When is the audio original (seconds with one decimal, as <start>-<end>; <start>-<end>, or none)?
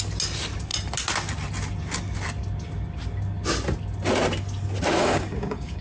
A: 0.0-5.0